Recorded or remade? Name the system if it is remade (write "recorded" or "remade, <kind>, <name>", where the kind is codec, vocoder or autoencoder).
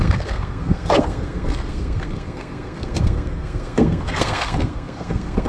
remade, codec, SNAC